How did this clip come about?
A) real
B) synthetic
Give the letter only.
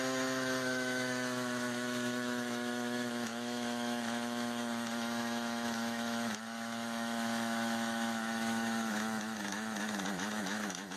B